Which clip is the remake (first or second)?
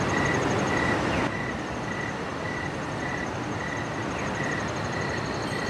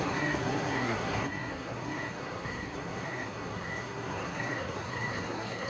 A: second